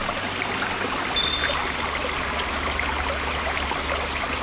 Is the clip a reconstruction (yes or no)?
no